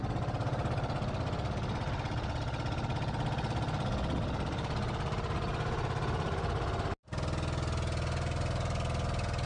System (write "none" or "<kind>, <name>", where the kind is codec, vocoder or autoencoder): none